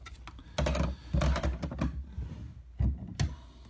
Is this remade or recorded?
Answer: recorded